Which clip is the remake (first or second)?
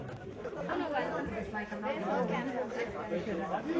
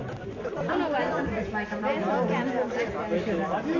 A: first